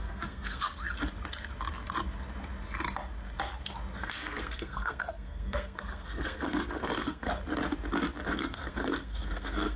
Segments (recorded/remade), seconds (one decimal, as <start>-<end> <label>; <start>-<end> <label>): 0.0-0.7 remade; 0.7-4.0 recorded; 4.0-7.3 remade; 7.3-8.3 recorded; 8.3-9.8 remade